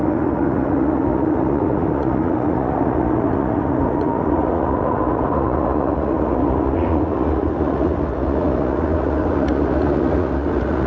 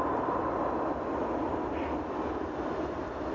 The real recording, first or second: second